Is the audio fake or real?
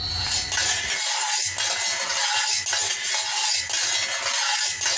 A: real